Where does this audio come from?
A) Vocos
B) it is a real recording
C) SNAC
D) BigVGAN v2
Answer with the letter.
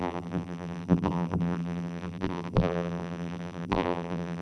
D